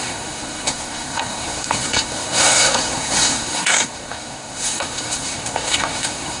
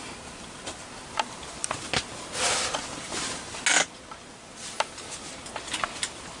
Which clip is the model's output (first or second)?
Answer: first